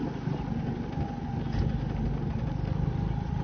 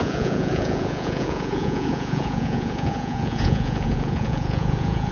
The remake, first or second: second